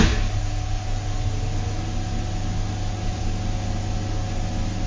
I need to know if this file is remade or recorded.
recorded